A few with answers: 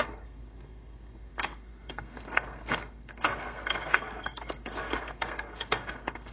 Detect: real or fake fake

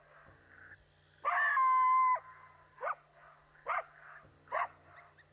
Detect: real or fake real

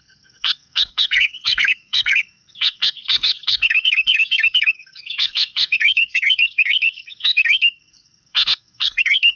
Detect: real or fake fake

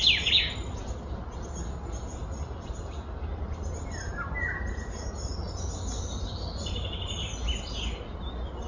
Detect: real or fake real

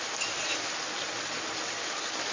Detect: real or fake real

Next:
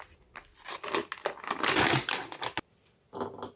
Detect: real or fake real